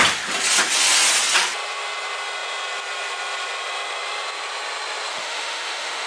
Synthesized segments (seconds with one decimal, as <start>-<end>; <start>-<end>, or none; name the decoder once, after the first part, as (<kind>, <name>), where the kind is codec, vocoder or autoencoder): 5.1-6.1 (autoencoder, DAC-VAE)